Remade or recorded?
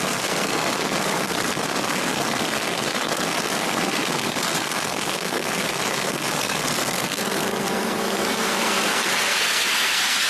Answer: remade